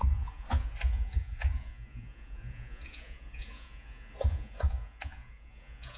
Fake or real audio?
fake